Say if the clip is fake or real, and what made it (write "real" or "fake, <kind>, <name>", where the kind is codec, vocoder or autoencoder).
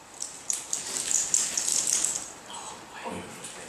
real